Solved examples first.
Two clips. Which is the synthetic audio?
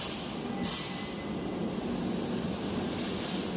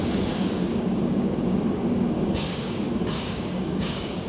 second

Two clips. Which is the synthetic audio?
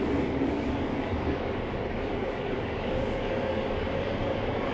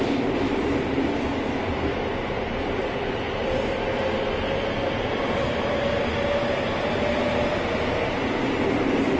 first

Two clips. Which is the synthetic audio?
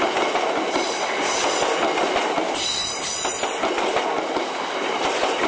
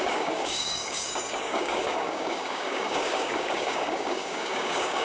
second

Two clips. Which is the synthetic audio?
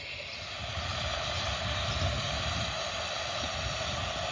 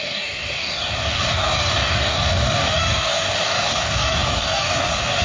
second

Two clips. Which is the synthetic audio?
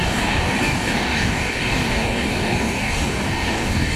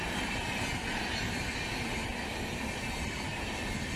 first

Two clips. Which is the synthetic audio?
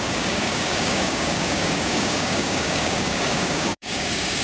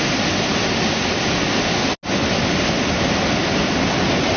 first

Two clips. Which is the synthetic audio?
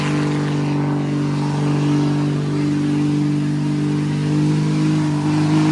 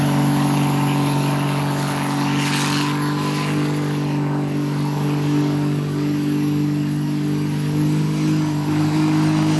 second